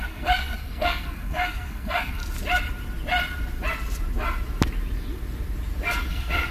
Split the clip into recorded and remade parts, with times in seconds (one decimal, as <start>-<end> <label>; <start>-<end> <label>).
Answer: 0.0-2.2 remade; 2.2-6.1 recorded; 6.1-6.5 remade